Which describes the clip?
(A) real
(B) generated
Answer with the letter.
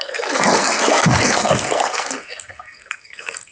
B